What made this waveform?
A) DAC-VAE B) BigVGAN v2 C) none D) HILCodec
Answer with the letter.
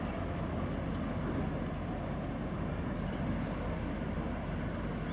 C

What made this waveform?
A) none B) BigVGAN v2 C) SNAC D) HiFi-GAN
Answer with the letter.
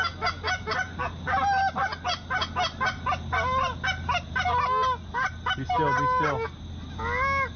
A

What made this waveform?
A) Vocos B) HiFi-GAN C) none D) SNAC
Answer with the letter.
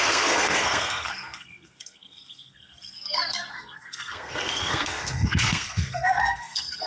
D